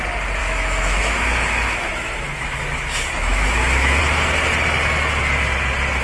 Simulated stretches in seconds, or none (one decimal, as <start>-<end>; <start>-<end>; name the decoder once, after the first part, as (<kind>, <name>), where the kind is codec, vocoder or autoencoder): 0.4-4.0 (autoencoder, DAC-VAE)